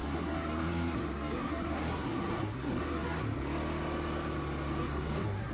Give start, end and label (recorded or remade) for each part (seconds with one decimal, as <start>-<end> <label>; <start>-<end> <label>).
0.0-3.2 remade; 3.2-4.8 recorded; 4.8-5.5 remade